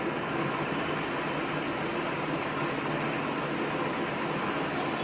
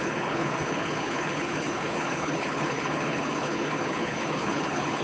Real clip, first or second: first